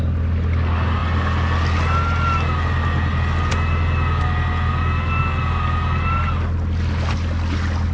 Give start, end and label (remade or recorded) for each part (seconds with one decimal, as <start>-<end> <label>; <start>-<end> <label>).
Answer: 0.0-7.9 recorded